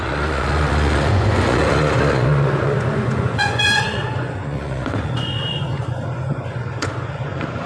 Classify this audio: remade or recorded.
remade